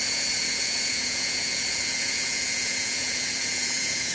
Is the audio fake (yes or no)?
yes